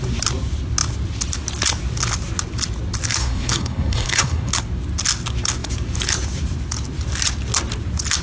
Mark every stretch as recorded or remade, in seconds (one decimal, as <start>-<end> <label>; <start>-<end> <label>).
0.0-3.2 recorded; 3.2-4.5 remade; 4.5-8.2 recorded